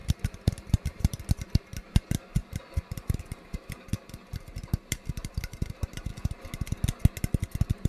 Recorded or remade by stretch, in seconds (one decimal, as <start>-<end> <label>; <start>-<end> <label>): 0.0-1.2 remade; 1.2-2.4 recorded; 2.4-6.1 remade; 6.1-7.9 recorded